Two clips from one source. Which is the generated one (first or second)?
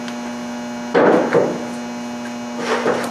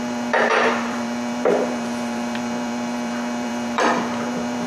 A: second